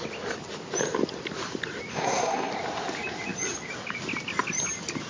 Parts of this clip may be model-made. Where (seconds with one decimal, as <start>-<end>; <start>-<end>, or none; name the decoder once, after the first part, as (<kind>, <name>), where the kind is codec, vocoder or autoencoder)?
1.9-2.5 (codec, SNAC)